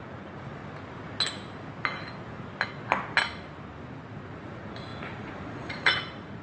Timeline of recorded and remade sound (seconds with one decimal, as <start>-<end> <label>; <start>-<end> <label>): 0.0-0.6 remade; 0.6-4.4 recorded; 4.4-6.4 remade